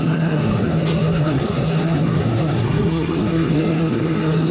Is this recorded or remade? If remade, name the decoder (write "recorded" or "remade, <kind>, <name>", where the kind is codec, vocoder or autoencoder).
remade, codec, SNAC